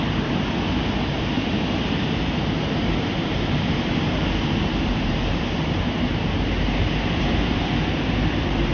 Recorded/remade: remade